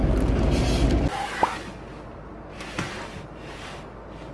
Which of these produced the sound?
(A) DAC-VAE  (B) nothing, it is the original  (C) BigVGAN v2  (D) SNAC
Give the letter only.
B